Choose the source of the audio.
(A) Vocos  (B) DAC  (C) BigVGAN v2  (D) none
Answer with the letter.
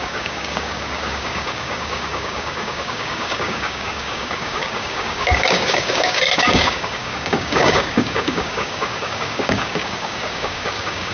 B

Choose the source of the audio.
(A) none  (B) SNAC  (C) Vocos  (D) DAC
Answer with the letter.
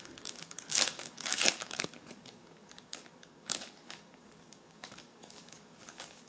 D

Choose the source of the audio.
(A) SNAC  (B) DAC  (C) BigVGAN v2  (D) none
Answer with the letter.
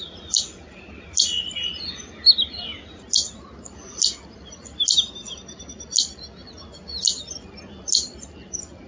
D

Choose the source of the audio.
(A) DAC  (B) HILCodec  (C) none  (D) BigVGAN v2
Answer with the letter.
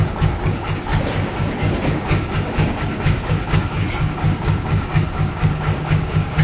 A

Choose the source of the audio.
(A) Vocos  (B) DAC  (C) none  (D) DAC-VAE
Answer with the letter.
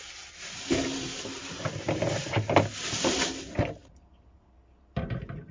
C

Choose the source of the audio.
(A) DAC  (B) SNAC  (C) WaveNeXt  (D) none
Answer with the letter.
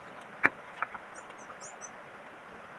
D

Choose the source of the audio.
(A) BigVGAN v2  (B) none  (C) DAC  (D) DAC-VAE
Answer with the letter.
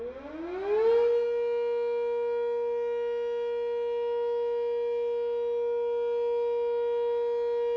B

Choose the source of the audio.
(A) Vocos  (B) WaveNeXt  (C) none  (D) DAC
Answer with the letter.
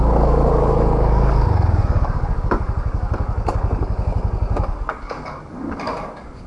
D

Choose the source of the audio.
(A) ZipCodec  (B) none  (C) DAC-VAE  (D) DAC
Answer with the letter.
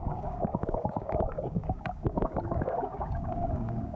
D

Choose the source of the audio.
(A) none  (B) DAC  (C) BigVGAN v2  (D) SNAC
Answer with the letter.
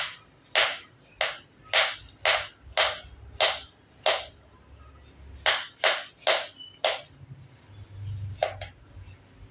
A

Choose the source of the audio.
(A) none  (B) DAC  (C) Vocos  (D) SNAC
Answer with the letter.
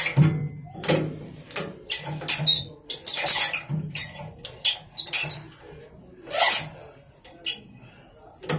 A